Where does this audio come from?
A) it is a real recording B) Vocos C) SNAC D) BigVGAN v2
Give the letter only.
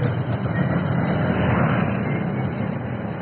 D